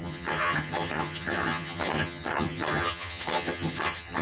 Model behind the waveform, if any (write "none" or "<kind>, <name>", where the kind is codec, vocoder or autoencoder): vocoder, HiFi-GAN